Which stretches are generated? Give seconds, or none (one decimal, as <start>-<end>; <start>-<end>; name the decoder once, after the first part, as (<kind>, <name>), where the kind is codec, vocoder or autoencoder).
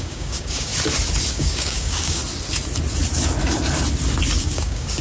0.0-0.7 (codec, DAC); 1.3-2.2; 4.4-5.0